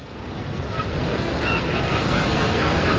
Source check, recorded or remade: remade